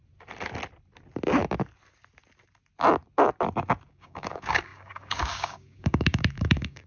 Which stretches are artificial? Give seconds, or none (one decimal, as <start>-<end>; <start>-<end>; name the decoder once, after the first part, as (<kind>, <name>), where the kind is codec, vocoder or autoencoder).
3.9-6.9 (codec, DAC)